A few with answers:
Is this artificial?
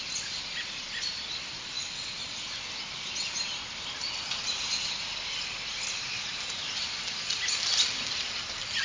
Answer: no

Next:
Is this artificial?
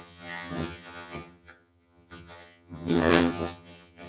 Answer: yes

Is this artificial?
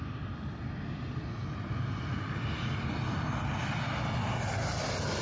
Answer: no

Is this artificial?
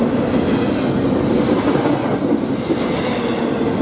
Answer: no